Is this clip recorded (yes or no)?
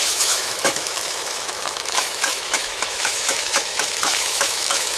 no